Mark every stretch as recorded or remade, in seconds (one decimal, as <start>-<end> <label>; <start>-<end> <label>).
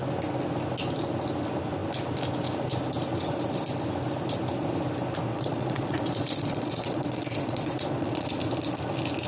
0.0-5.3 recorded; 5.3-8.4 remade; 8.4-9.3 recorded